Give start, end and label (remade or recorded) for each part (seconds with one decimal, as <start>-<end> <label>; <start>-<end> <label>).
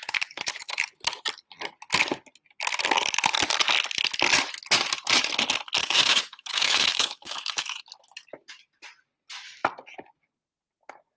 0.0-5.8 recorded; 5.8-7.8 remade; 7.8-11.2 recorded